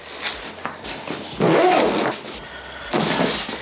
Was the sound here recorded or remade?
recorded